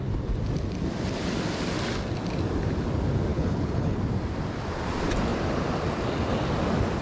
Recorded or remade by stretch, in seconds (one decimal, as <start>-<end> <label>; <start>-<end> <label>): 0.0-3.3 recorded; 3.3-4.0 remade; 4.0-7.0 recorded